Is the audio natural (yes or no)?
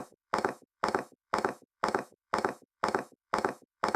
no